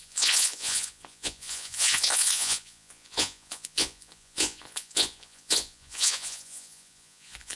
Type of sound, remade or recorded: remade